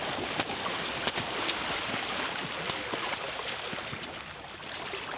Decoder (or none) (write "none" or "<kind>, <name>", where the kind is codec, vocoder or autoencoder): none